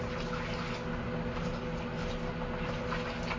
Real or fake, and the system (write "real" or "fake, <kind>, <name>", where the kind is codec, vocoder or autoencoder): real